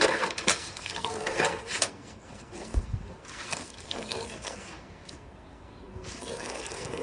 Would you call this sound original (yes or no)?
no